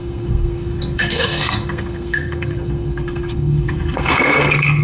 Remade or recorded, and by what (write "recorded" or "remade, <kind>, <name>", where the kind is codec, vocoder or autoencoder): remade, codec, SNAC